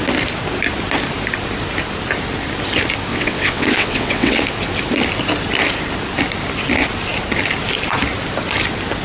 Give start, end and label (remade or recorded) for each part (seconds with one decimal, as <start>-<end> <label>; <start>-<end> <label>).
0.0-3.1 recorded; 3.1-4.4 remade; 4.4-9.0 recorded